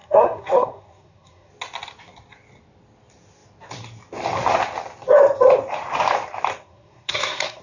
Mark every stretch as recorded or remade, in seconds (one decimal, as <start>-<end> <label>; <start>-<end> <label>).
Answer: 0.0-1.5 remade; 1.5-6.6 recorded; 6.6-7.6 remade